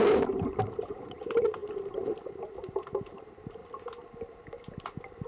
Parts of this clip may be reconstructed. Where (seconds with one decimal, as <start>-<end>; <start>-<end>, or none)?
0.0-3.6